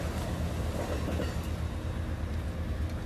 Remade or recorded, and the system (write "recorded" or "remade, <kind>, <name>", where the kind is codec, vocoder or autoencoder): recorded